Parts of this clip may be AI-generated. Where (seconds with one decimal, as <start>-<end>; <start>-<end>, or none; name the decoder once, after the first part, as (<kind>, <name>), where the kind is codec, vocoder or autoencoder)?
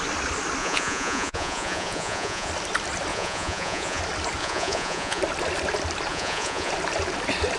0.6-2.5 (vocoder, Vocos); 3.1-4.0; 4.4-5.2; 6.1-6.7